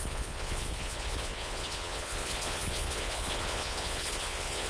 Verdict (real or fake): fake